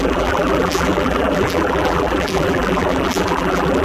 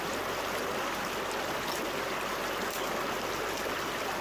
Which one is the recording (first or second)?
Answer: second